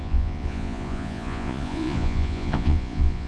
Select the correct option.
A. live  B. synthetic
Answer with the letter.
B